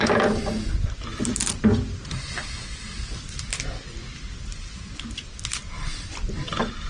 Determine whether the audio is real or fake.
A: real